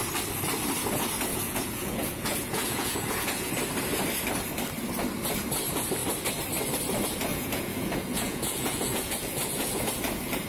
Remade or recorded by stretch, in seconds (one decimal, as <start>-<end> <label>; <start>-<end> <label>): 0.0-1.3 recorded; 1.3-3.5 remade; 3.5-7.3 recorded; 7.3-9.8 remade; 9.8-10.5 recorded